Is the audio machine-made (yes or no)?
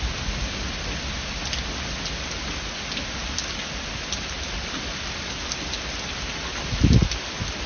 no